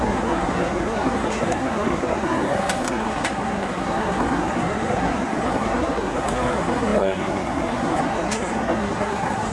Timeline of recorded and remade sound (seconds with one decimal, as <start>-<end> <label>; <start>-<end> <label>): 0.0-9.5 remade